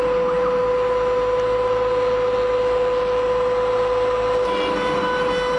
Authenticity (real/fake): real